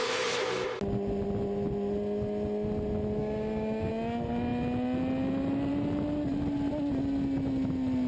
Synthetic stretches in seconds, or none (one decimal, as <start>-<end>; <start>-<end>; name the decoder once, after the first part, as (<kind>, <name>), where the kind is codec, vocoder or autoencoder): 3.2-3.9 (codec, DAC)